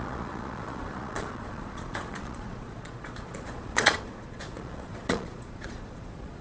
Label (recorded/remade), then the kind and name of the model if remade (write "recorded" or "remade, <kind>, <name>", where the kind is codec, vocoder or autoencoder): remade, vocoder, Vocos